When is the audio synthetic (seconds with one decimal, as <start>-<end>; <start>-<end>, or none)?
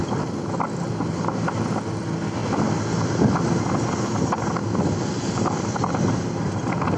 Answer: 4.6-6.3